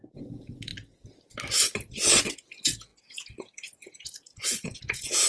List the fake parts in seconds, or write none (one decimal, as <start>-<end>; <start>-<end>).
0.0-0.7; 2.2-5.3